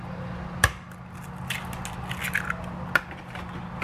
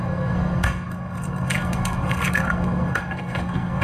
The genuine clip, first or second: first